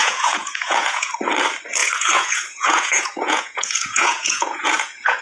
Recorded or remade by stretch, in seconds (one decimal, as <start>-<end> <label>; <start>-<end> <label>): 0.0-1.1 remade; 1.1-1.8 recorded; 1.8-5.2 remade